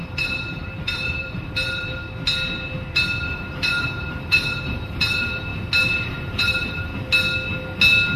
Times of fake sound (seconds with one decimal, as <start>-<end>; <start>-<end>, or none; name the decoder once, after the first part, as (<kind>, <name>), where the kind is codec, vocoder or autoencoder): 0.0-2.0 (vocoder, BigVGAN v2); 3.2-5.5; 6.1-6.9